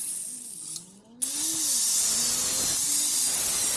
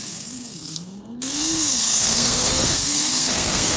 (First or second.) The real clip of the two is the first